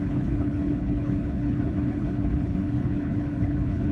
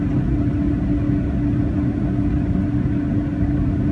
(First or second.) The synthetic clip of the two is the first